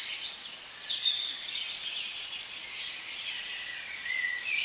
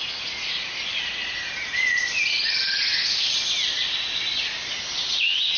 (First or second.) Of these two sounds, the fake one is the first